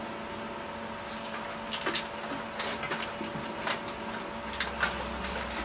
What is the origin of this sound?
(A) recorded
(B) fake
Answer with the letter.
A